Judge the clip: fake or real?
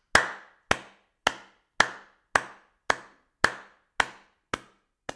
real